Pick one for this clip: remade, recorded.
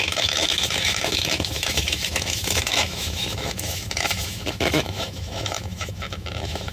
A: remade